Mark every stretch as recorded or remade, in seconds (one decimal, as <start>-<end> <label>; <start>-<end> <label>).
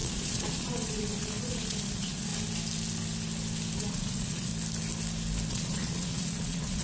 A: 0.0-2.3 remade; 2.3-3.8 recorded; 3.8-4.5 remade; 4.5-5.5 recorded; 5.5-6.8 remade